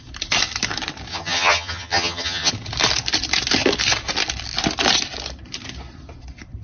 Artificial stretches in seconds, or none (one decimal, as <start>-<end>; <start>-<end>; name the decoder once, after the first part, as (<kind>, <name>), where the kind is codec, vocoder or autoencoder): 1.1-2.5 (vocoder, HiFi-GAN)